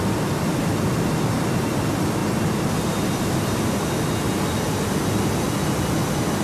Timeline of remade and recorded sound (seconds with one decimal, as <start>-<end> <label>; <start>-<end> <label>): 0.0-2.2 recorded; 2.2-4.0 remade; 4.0-6.4 recorded